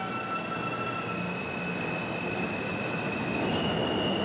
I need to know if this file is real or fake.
real